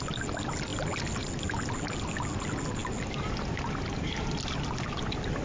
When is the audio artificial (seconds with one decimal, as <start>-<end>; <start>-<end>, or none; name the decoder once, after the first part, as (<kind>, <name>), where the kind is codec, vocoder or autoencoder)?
none